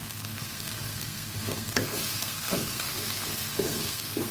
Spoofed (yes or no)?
yes